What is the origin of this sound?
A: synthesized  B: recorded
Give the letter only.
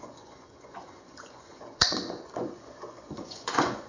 A